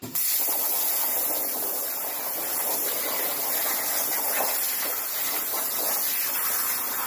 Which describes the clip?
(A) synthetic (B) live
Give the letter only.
B